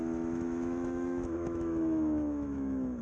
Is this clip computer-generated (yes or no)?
yes